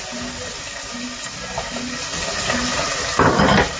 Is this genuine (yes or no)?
yes